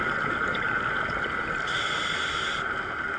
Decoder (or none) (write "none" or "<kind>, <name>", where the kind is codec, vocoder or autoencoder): none